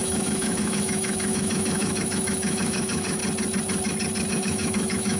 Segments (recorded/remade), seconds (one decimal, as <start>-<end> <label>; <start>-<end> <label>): 0.0-3.2 remade; 3.2-4.3 recorded; 4.3-5.2 remade